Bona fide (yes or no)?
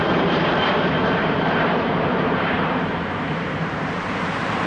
no